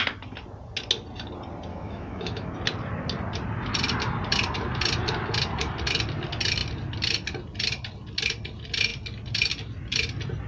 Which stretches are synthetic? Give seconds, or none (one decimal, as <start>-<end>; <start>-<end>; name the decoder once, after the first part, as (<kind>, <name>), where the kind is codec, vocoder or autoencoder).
1.7-2.5 (autoencoder, DAC-VAE)